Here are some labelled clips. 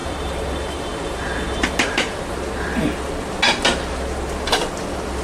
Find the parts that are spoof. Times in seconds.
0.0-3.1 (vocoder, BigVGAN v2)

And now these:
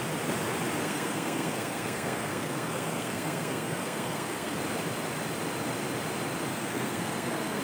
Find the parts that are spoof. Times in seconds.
0.8-4.6 (codec, SNAC); 6.5-7.6

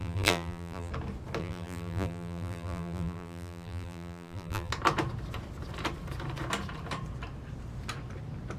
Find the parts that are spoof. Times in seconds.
0.0-0.9 (vocoder, BigVGAN v2); 1.4-4.7

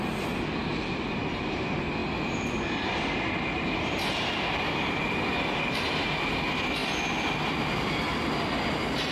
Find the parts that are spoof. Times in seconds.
none

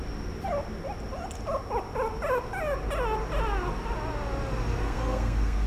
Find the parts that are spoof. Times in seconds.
4.8-5.7 (codec, SNAC)

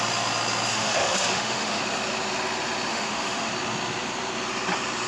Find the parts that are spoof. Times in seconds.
0.7-1.8 (autoencoder, DAC-VAE); 2.9-3.5